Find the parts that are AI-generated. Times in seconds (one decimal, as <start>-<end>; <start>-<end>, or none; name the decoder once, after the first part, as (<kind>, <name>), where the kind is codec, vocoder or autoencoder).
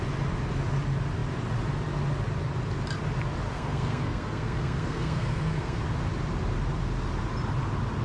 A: 3.5-5.8 (codec, SNAC)